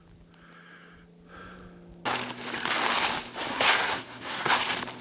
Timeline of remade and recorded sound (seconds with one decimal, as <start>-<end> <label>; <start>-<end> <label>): 0.0-3.5 recorded; 3.5-4.5 remade; 4.5-5.0 recorded